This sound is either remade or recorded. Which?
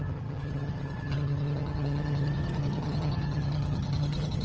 remade